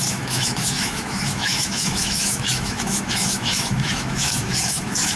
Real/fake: fake